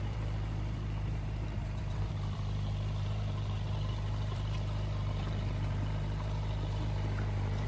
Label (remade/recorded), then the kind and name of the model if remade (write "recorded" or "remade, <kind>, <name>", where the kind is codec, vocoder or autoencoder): remade, vocoder, BigVGAN v2